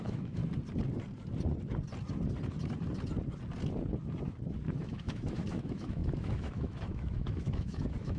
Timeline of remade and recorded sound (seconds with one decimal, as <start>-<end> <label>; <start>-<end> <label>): 0.0-0.4 remade; 0.4-4.8 recorded; 4.8-8.2 remade